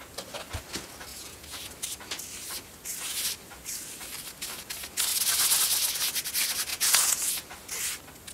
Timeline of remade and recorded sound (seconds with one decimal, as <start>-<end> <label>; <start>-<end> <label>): 0.0-1.1 recorded; 1.1-1.6 remade; 1.6-6.7 recorded; 6.7-7.3 remade; 7.3-8.3 recorded